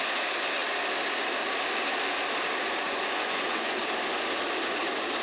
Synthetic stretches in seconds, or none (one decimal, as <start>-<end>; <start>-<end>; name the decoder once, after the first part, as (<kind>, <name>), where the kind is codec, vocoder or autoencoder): 2.8-3.8 (vocoder, Vocos)